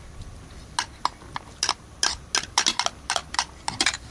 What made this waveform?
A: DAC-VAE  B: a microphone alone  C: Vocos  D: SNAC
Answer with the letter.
B